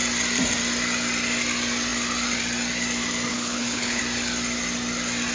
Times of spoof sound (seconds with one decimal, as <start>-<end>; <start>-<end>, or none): 3.3-4.0